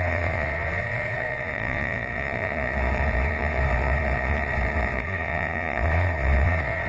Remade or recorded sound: remade